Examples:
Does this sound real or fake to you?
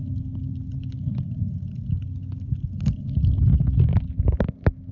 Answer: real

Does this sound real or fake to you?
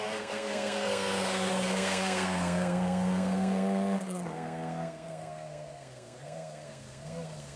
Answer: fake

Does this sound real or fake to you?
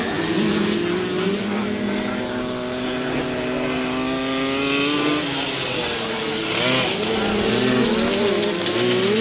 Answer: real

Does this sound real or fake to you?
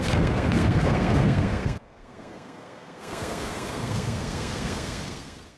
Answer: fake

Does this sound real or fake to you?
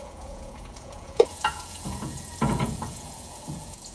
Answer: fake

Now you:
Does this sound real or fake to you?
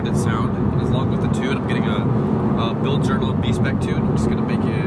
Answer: real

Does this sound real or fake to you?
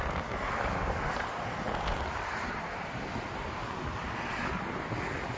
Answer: real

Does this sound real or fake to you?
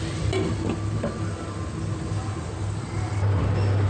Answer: real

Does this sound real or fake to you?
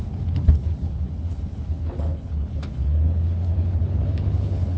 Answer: fake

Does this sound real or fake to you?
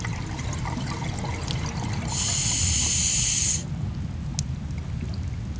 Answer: real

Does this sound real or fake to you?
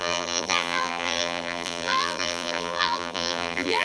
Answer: fake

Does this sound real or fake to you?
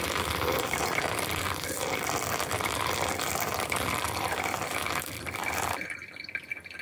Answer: fake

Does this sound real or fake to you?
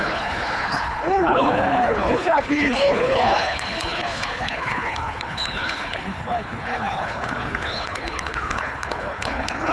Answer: fake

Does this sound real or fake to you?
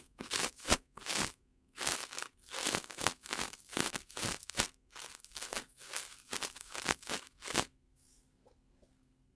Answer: fake